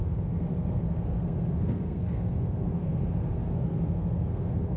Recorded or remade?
remade